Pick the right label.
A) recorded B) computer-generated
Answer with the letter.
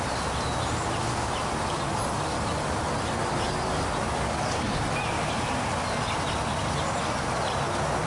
A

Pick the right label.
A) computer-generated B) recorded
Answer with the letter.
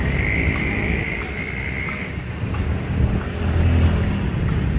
B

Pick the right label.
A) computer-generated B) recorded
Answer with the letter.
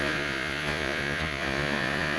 A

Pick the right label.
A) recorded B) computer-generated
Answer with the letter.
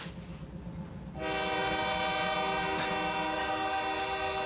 A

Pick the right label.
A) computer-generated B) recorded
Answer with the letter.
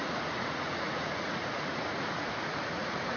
A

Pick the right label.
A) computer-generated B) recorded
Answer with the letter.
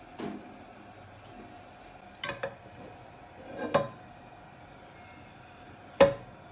B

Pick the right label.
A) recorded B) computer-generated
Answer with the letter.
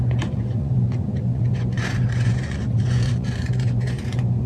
B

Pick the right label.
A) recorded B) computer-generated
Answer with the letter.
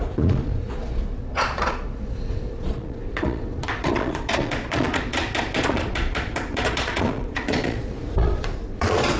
B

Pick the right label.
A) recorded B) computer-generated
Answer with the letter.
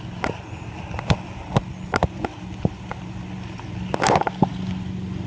A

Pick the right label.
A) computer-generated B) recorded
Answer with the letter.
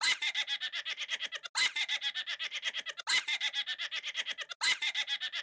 B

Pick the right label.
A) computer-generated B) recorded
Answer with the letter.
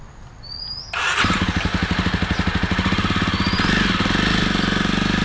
B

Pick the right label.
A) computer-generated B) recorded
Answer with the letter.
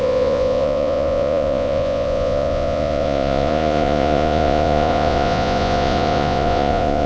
A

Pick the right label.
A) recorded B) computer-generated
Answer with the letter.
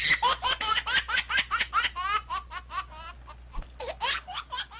A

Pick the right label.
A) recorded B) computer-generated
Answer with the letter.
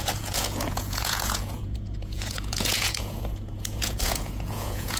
B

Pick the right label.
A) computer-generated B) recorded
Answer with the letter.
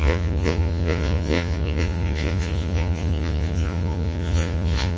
A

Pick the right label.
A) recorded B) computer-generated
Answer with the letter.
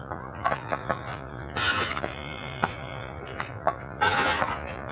B